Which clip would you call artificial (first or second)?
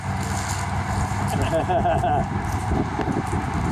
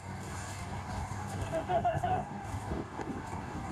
second